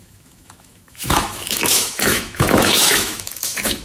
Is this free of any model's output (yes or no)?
no